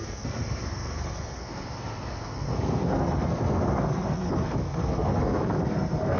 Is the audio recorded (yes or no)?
no